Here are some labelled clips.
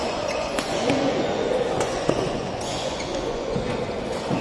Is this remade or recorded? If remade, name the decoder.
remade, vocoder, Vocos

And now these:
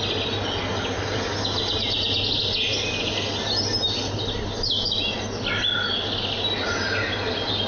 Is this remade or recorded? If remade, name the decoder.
recorded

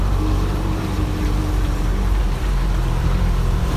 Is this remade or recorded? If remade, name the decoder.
remade, vocoder, BigVGAN v2